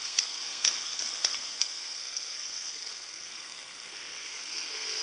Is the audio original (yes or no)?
no